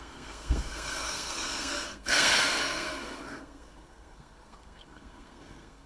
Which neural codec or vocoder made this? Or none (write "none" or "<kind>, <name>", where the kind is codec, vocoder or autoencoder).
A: codec, SNAC